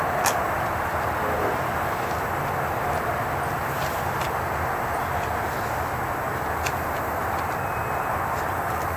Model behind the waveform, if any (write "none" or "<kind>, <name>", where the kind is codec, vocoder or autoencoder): none